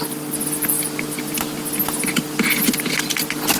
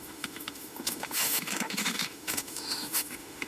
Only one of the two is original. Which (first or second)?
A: first